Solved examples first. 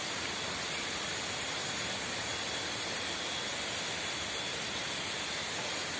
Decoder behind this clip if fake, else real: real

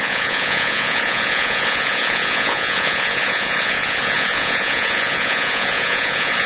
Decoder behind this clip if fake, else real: fake, vocoder, Vocos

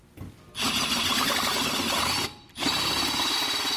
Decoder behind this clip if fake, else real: real